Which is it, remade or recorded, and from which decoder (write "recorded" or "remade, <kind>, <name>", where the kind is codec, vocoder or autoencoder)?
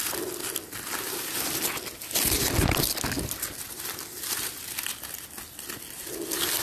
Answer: recorded